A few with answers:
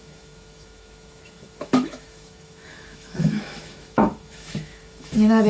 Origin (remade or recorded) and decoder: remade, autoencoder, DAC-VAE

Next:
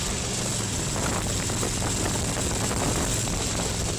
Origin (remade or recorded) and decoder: recorded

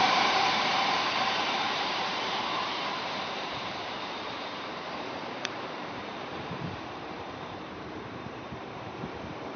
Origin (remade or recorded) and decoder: remade, vocoder, BigVGAN v2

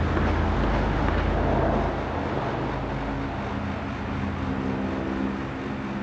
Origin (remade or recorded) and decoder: recorded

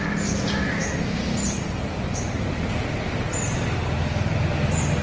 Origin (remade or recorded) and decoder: recorded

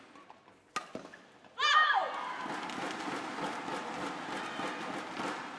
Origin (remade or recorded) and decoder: recorded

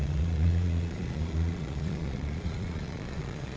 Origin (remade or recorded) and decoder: remade, vocoder, Vocos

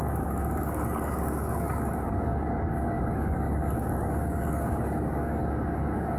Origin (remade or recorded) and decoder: remade, codec, DAC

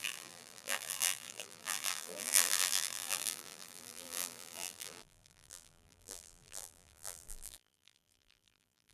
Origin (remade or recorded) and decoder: remade, vocoder, BigVGAN v2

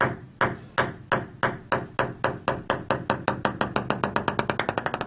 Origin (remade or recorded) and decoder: recorded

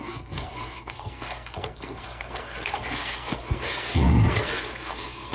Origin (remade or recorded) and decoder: remade, codec, SNAC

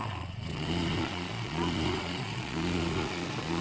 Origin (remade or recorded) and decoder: remade, vocoder, Vocos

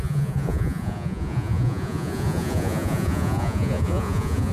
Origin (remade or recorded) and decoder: remade, vocoder, Vocos